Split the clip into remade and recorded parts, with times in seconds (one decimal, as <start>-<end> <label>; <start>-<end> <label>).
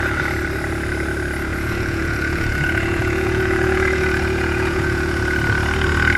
0.0-1.5 recorded; 1.5-5.2 remade; 5.2-6.2 recorded